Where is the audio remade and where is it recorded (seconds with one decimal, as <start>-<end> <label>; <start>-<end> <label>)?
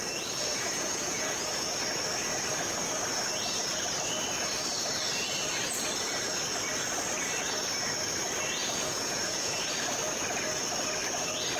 0.0-0.5 recorded; 0.5-1.8 remade; 1.8-8.6 recorded; 8.6-9.7 remade; 9.7-11.6 recorded